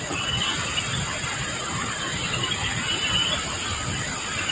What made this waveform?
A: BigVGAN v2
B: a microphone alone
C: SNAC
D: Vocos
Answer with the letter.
B